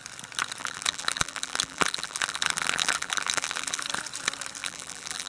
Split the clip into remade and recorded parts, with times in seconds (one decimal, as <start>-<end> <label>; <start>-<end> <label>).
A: 0.0-0.6 recorded; 0.6-3.8 remade; 3.8-4.6 recorded; 4.6-5.3 remade